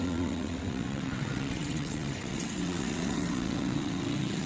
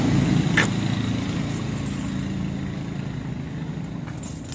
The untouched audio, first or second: second